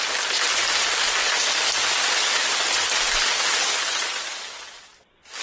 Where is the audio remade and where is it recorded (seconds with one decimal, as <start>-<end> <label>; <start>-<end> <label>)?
0.0-5.4 recorded